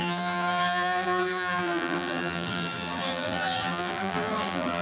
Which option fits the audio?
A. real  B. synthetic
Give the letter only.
B